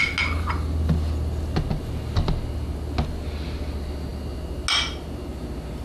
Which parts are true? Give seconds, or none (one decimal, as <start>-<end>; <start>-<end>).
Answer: 0.0-5.8

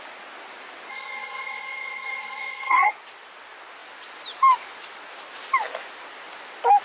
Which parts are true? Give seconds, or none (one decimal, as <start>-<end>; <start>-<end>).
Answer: 0.0-0.9; 2.9-6.8

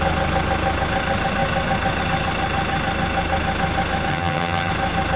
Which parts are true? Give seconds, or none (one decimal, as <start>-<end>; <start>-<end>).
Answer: 0.0-4.1; 4.7-5.2

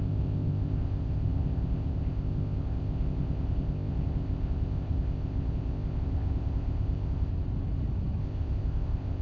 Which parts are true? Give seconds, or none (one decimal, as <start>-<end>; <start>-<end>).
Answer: 7.3-8.2

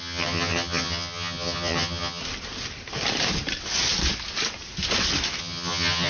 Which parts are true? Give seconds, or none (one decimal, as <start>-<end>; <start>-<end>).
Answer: 2.2-5.4

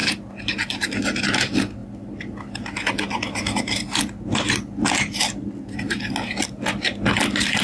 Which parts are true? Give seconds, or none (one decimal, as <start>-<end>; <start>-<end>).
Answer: 0.0-7.6